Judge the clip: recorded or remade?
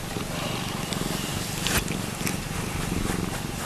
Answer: recorded